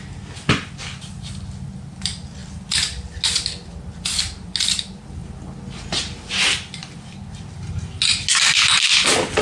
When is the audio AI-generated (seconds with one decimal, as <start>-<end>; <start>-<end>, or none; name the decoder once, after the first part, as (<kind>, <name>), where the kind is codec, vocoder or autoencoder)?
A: none